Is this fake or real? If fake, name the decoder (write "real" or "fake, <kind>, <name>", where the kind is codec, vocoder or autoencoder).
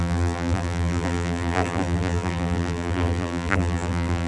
fake, vocoder, BigVGAN v2